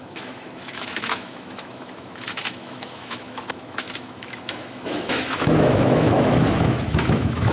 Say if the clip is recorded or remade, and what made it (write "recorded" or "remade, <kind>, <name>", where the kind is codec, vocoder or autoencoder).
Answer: remade, autoencoder, DAC-VAE